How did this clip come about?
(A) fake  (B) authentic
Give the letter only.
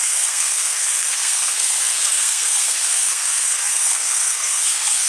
A